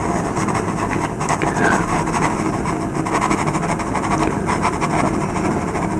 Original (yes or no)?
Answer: yes